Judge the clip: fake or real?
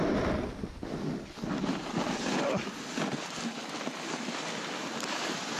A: real